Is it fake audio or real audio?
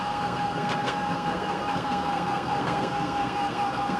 fake